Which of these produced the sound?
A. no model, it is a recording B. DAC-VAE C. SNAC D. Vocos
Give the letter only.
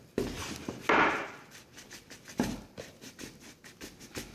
A